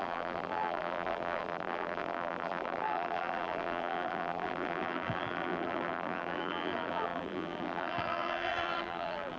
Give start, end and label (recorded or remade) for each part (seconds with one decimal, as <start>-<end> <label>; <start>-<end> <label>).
0.0-9.4 remade